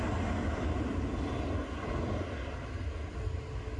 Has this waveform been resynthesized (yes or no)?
no